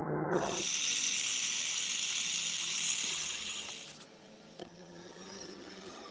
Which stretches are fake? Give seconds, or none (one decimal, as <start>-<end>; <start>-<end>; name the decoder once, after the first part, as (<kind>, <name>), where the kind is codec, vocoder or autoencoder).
0.0-0.6 (vocoder, HiFi-GAN); 3.1-3.7; 4.6-6.1